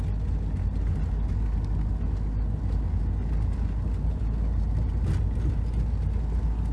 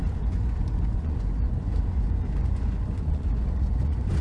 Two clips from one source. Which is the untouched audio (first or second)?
first